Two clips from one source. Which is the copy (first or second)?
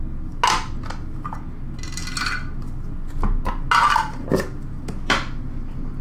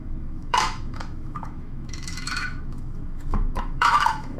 second